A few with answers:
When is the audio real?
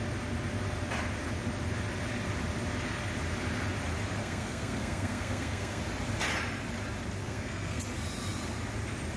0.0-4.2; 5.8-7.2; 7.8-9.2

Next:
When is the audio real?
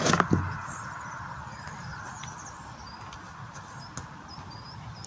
0.0-5.1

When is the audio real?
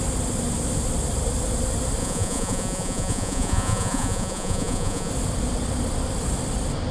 0.0-2.0; 5.1-6.9